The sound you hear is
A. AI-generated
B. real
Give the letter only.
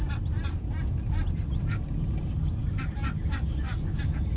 B